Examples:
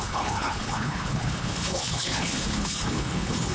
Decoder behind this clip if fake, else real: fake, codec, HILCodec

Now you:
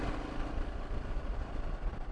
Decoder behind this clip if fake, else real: fake, vocoder, BigVGAN v2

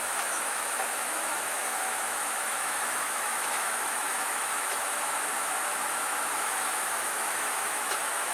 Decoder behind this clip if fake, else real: fake, autoencoder, DAC-VAE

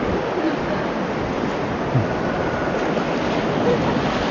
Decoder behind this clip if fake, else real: real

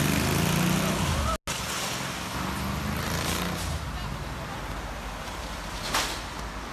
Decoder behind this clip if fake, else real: real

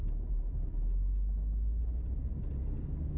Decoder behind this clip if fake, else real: real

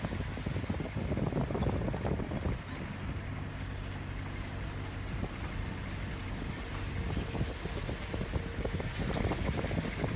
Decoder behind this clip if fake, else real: real